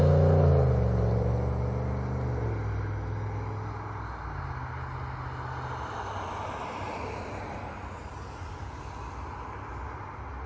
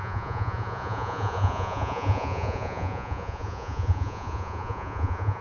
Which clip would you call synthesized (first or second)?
second